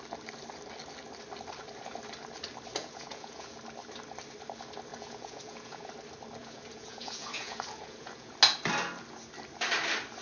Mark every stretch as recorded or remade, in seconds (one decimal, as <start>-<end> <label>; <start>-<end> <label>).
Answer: 0.0-2.8 recorded; 2.8-3.6 remade; 3.6-4.9 recorded; 4.9-5.9 remade; 5.9-6.4 recorded; 6.4-8.3 remade; 8.3-10.2 recorded